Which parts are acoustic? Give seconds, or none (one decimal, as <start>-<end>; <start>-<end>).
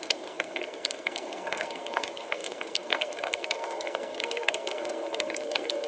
none